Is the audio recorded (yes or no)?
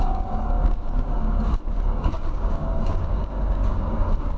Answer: no